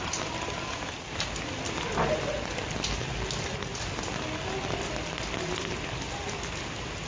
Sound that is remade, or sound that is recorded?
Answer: recorded